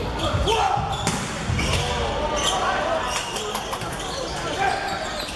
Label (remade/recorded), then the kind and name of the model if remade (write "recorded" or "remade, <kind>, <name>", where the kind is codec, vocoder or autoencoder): recorded